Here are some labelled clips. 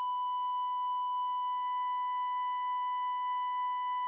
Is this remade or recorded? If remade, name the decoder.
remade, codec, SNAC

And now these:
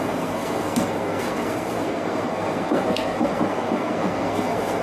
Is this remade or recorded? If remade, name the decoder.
remade, codec, SNAC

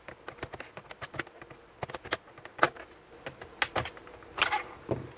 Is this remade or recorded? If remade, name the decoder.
recorded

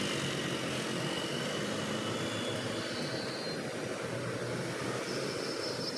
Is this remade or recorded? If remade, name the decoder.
recorded